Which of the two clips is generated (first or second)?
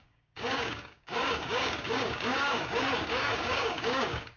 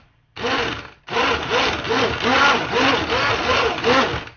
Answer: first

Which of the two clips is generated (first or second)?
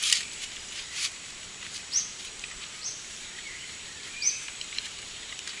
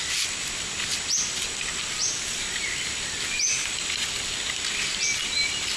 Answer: first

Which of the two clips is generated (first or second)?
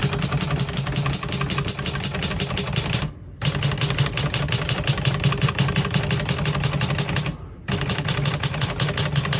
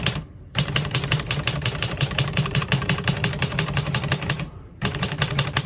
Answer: second